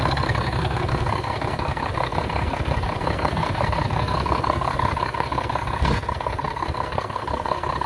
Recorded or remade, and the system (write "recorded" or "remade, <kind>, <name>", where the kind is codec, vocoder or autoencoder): remade, codec, SNAC